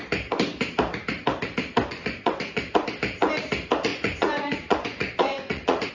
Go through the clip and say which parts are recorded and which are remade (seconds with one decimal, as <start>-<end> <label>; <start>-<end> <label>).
0.0-1.8 recorded; 1.8-2.6 remade; 2.6-3.9 recorded; 3.9-5.9 remade